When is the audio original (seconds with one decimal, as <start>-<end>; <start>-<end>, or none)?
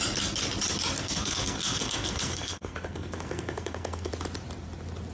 0.0-1.0; 4.1-5.1